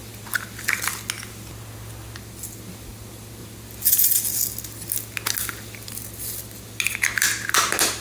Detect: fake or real real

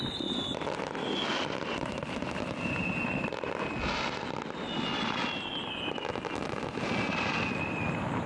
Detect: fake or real real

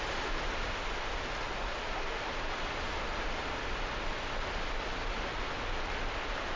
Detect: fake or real real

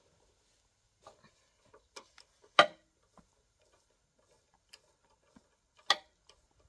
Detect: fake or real real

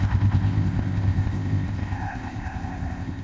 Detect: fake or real fake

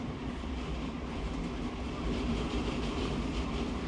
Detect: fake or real fake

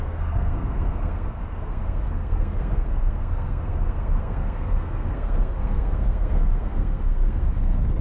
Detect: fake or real fake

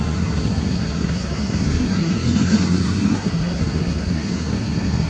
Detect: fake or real fake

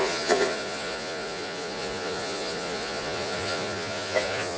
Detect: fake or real fake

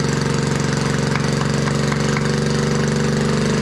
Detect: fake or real real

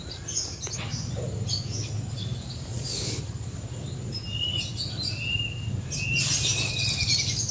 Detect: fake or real real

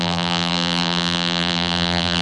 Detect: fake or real fake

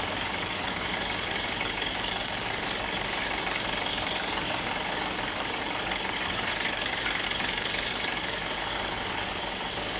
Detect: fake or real fake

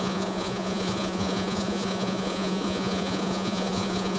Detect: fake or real fake